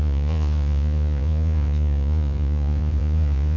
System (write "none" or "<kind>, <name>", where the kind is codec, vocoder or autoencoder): vocoder, Vocos